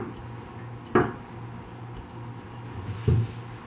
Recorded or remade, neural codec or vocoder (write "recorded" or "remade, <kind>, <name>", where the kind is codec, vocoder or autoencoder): recorded